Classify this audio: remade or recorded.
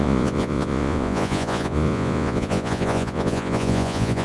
remade